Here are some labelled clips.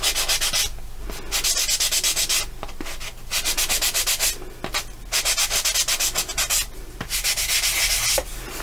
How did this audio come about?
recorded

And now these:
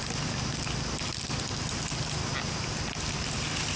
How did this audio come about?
recorded